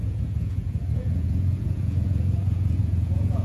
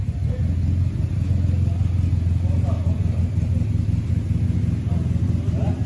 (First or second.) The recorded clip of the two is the second